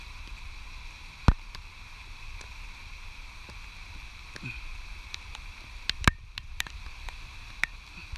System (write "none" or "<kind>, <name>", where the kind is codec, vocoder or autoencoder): none